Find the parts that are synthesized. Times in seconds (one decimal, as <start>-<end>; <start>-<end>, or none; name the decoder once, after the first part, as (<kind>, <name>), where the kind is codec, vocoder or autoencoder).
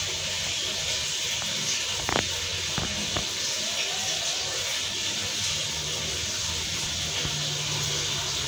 2.5-6.9 (vocoder, BigVGAN v2)